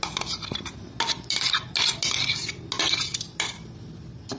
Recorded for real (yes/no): yes